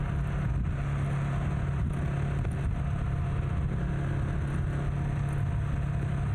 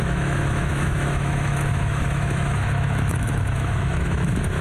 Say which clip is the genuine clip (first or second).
first